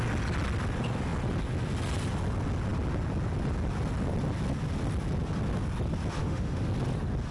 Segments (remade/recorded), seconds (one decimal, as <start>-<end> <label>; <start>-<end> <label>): 0.0-6.2 recorded; 6.2-6.7 remade; 6.7-7.3 recorded